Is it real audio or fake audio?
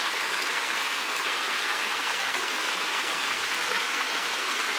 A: fake